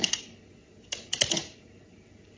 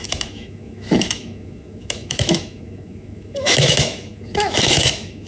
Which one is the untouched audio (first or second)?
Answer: first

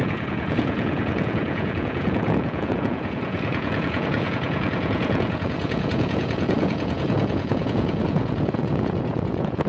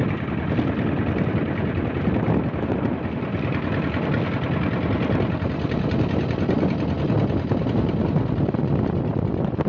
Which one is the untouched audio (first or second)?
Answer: second